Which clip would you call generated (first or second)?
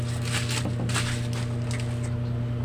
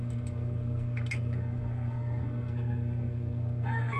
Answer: second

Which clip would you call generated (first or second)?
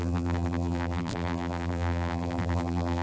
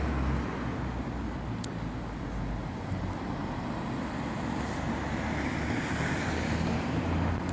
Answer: first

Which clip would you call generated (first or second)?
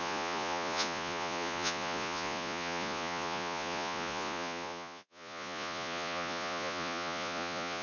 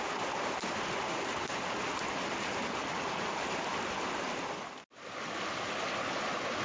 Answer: first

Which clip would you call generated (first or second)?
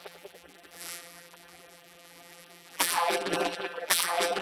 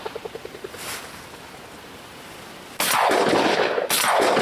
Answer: first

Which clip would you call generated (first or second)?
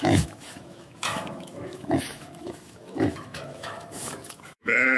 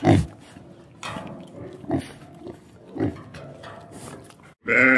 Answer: first